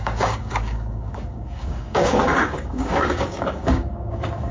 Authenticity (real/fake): fake